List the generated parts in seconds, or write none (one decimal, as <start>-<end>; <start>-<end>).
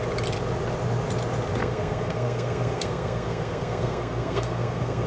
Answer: 1.6-5.1